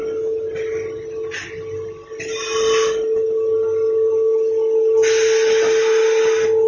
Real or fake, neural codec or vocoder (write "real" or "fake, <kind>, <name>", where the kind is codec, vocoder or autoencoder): real